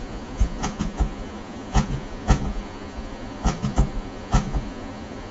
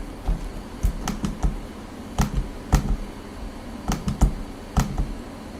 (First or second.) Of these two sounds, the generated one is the first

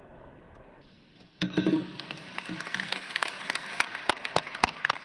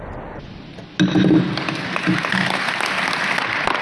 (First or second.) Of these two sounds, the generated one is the first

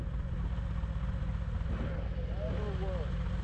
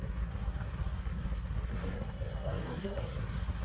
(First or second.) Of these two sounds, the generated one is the second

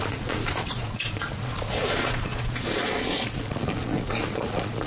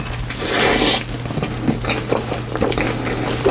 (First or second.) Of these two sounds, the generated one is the first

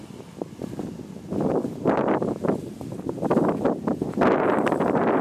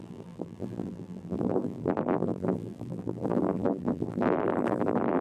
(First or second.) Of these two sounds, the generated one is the second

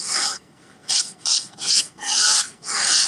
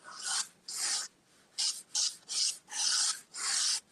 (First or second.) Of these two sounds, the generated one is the first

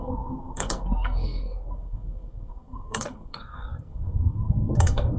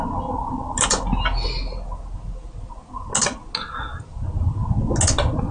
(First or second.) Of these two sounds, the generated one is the first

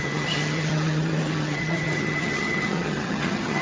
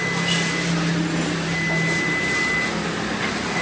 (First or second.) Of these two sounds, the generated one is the first